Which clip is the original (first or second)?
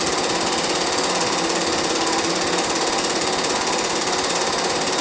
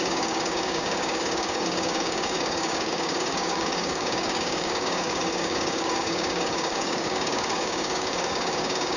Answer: first